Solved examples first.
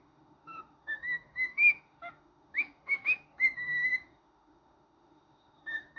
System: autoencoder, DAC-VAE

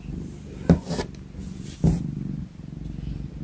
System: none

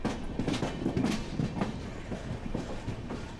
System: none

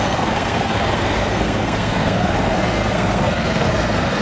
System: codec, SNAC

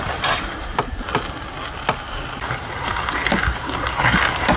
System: none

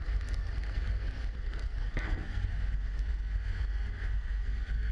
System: codec, SNAC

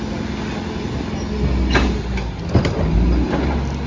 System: none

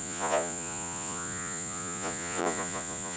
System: vocoder, Vocos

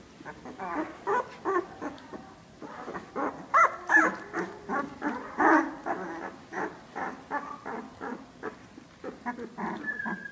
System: none